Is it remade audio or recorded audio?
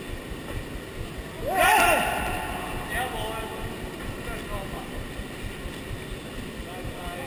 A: recorded